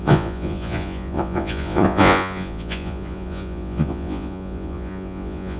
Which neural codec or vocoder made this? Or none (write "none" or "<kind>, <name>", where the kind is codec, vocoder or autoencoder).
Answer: vocoder, Vocos